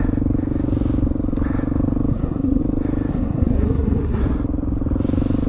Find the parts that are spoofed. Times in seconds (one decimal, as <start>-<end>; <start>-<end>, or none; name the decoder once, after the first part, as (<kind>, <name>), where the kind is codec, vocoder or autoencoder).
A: 2.1-2.6 (codec, SNAC); 3.1-4.2